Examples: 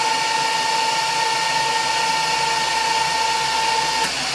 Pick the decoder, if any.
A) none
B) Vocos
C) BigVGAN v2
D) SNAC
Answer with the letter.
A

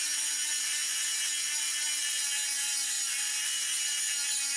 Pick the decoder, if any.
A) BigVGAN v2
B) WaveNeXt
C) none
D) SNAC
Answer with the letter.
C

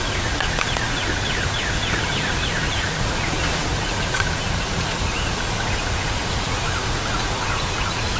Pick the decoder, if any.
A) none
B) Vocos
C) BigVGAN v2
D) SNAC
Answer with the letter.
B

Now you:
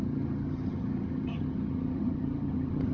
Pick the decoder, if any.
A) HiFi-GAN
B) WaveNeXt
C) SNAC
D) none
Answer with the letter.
A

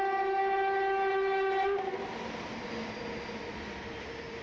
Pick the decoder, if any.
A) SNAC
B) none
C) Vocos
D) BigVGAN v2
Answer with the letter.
B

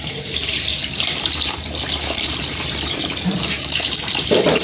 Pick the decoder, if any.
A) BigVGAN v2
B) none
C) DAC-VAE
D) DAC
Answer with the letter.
A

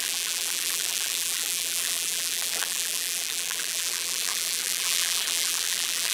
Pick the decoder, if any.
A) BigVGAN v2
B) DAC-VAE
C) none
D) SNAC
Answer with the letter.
A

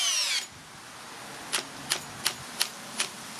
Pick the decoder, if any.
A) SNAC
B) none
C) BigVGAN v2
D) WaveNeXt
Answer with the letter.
B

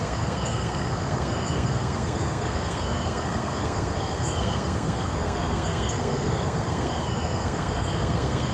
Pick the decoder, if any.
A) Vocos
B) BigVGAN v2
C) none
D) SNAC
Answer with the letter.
D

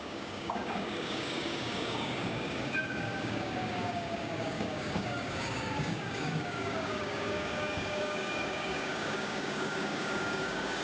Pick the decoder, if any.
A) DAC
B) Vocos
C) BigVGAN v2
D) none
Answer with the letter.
A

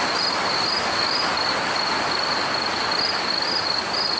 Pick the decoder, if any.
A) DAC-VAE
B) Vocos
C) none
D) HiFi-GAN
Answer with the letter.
C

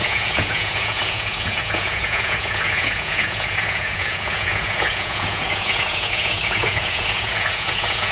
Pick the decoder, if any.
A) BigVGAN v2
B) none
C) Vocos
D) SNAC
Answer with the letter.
C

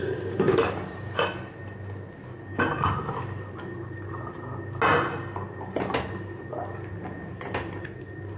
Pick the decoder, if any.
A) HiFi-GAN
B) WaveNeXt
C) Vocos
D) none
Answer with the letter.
D